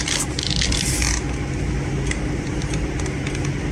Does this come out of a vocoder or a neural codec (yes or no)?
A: no